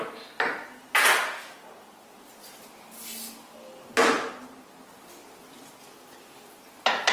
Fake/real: real